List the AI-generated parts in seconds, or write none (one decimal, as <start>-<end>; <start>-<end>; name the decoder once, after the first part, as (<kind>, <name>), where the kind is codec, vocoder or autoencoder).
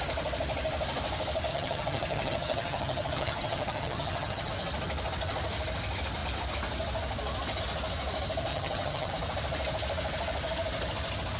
1.5-4.5 (vocoder, HiFi-GAN); 8.5-9.1